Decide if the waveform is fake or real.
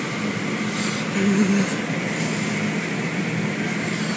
fake